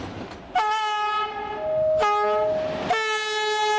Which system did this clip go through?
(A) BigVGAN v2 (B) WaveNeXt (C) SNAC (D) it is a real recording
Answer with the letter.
D